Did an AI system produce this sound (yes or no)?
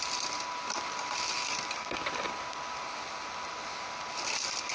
no